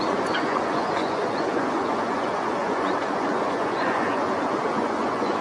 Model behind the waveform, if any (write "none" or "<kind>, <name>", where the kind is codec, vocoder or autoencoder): vocoder, Vocos